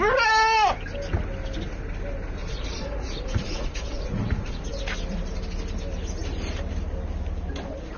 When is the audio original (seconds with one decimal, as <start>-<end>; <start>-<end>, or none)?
0.0-2.4; 4.8-8.0